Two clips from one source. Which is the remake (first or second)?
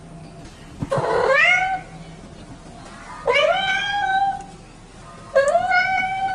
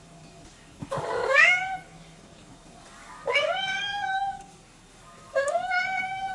second